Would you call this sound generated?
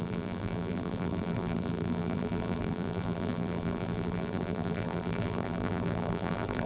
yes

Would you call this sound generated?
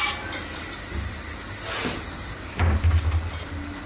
no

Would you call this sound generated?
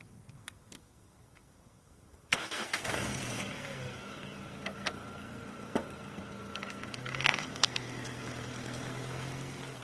yes